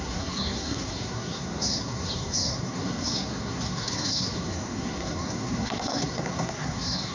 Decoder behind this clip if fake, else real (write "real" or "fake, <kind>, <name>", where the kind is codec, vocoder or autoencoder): fake, codec, SNAC